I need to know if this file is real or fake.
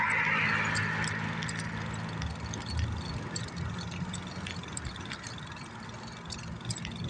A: real